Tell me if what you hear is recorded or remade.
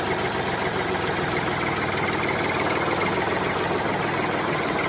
recorded